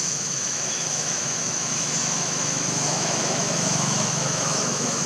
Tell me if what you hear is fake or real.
fake